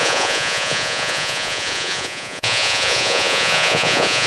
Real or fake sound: fake